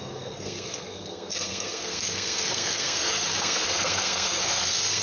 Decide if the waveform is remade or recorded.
remade